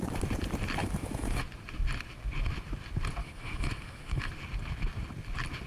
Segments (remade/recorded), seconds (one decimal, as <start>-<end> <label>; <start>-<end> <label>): 0.0-0.8 recorded; 0.8-1.4 remade; 1.4-3.2 recorded; 3.2-4.3 remade; 4.3-5.7 recorded